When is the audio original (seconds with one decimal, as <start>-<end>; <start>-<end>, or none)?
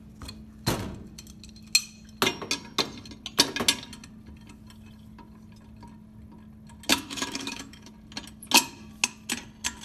0.0-6.9; 7.9-9.8